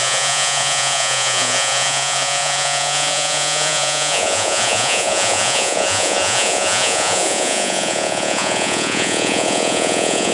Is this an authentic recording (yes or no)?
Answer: no